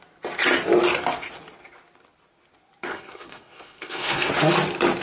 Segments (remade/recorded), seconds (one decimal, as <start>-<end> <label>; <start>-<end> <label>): 0.0-2.9 recorded; 2.9-4.3 remade; 4.3-5.0 recorded